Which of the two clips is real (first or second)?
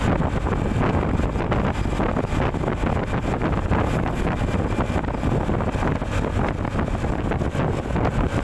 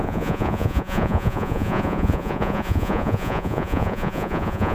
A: first